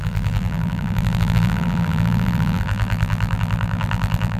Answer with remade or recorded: remade